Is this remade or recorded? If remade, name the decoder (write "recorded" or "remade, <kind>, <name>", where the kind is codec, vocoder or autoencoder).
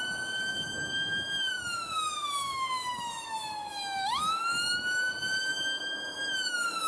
remade, autoencoder, DAC-VAE